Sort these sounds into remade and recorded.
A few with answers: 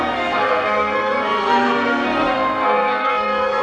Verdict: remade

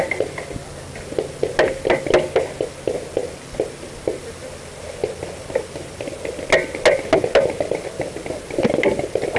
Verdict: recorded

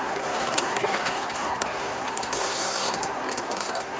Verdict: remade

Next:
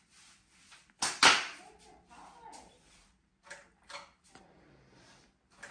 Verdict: recorded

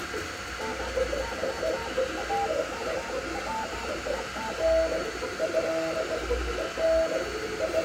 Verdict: recorded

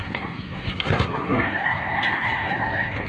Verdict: remade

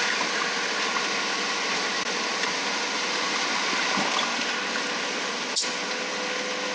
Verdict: recorded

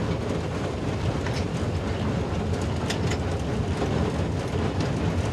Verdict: recorded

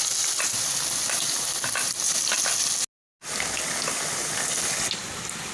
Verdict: recorded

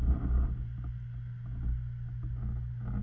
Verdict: recorded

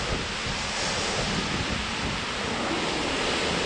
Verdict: recorded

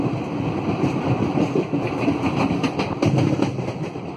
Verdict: recorded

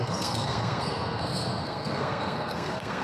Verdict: remade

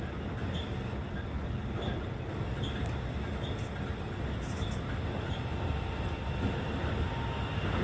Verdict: recorded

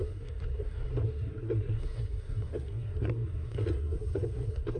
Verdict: remade